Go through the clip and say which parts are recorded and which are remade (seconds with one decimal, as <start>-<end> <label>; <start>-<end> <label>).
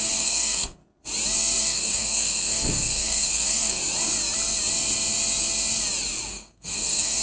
0.0-0.8 remade; 0.8-1.6 recorded; 1.6-3.8 remade; 3.8-6.3 recorded; 6.3-7.2 remade